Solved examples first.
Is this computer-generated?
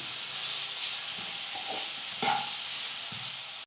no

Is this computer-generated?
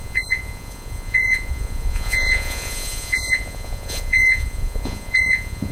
yes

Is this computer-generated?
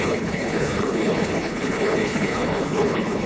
yes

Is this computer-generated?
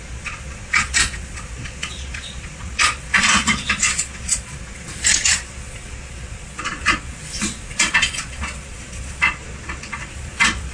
yes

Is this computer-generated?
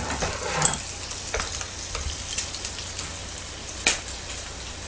no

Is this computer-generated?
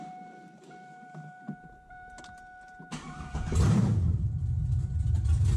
yes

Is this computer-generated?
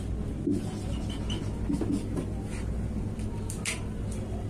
no